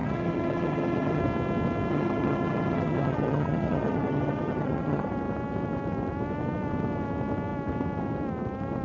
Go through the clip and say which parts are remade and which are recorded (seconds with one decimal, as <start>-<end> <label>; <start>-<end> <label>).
0.0-1.2 remade; 1.2-1.9 recorded; 1.9-5.1 remade; 5.1-8.8 recorded